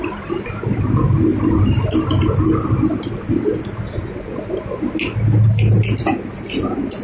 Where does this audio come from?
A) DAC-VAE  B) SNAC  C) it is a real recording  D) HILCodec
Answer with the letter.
C